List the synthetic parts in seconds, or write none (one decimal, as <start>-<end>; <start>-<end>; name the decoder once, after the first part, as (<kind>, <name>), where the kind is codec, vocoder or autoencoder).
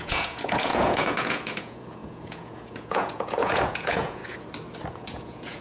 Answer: 0.0-4.2 (vocoder, Vocos); 4.9-5.6